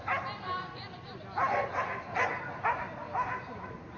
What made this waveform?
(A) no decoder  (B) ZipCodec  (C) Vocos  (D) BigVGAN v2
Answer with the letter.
A